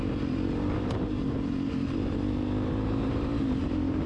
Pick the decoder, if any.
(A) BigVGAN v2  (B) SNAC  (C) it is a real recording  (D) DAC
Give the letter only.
A